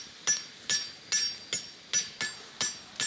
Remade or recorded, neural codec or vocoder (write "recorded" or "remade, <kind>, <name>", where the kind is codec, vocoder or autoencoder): recorded